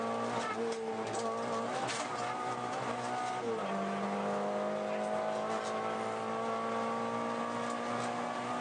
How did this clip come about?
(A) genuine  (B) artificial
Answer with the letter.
A